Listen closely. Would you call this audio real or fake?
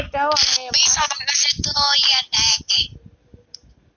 real